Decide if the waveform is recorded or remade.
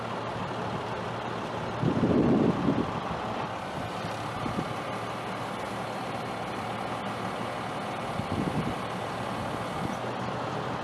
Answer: recorded